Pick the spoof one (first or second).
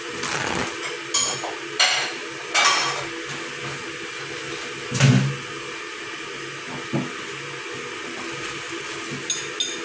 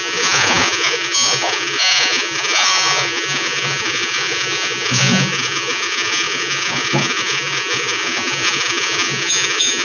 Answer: second